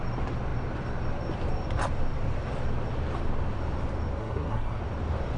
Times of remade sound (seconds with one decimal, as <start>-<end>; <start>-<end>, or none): 4.2-4.8